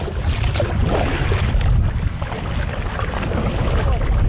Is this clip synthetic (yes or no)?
no